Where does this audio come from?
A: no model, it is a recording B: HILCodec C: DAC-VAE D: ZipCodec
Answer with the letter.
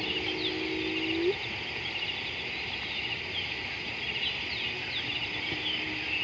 A